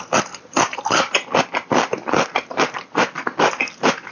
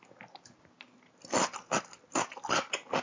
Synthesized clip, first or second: first